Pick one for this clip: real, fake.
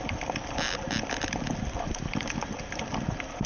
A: real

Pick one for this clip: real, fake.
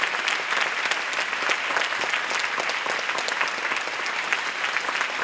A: real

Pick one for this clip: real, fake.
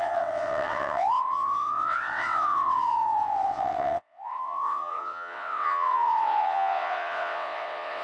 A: fake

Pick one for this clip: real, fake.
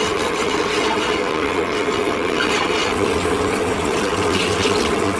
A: fake